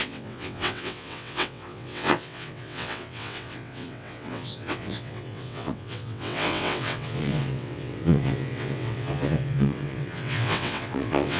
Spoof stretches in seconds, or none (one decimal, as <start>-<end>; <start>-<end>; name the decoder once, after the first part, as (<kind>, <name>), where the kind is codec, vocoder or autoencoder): 0.0-11.4 (vocoder, WaveNeXt)